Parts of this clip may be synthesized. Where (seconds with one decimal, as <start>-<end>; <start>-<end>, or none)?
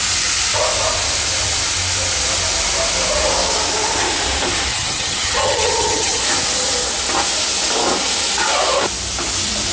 4.7-6.2